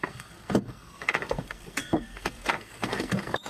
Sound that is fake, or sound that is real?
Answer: fake